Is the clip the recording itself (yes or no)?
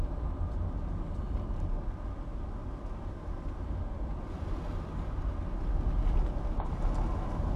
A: yes